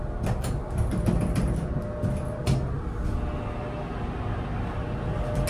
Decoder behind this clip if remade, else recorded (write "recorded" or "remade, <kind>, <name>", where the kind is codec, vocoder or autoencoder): recorded